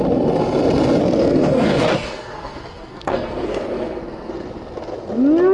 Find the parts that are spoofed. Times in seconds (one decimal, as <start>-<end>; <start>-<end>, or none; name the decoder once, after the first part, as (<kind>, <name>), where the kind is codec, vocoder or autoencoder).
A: 1.0-4.3 (codec, SNAC)